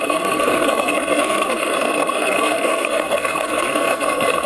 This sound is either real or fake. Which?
fake